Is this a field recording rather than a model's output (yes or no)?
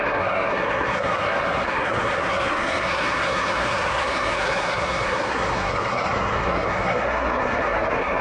no